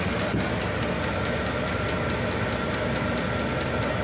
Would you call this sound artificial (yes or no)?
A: no